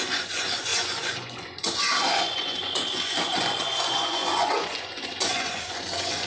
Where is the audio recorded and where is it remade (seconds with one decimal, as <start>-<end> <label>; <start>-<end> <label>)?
0.0-6.3 remade